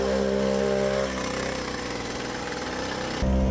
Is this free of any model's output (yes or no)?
yes